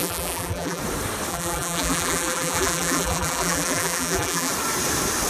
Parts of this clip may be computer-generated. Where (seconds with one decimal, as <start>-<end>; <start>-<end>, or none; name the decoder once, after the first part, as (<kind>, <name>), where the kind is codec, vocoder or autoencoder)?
0.0-0.8 (vocoder, BigVGAN v2); 1.3-4.5